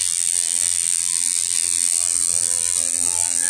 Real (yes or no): no